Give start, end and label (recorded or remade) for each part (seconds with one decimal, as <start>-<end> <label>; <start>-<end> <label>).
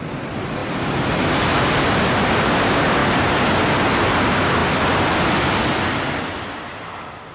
0.0-7.3 recorded